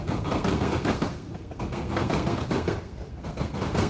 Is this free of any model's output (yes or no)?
no